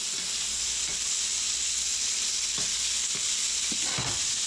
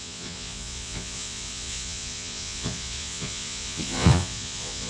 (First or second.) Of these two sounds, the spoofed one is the second